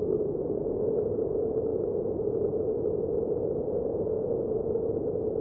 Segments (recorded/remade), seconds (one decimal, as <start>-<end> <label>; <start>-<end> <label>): 0.0-5.4 remade